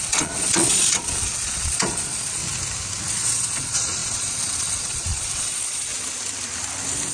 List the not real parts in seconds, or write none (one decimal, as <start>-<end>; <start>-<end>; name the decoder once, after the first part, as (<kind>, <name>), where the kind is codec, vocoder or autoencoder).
0.0-2.4 (vocoder, Vocos); 3.1-5.9